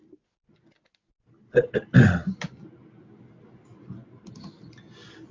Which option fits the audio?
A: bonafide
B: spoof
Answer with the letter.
A